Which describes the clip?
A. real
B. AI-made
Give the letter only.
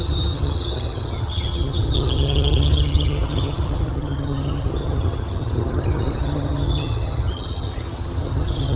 B